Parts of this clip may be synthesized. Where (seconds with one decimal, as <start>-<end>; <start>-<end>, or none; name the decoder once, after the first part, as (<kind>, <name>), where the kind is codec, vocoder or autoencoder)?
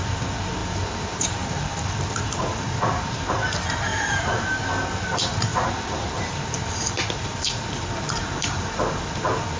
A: 0.6-1.6 (vocoder, BigVGAN v2); 3.9-4.4; 5.5-9.0